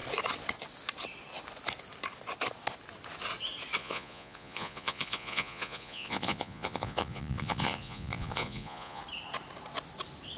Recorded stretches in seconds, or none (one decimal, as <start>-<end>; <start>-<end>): 0.0-3.8; 9.0-10.4